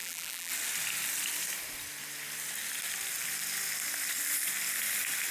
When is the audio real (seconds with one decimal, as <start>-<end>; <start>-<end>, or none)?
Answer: 0.5-5.3